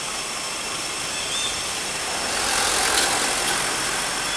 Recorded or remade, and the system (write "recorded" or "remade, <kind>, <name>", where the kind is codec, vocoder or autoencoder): recorded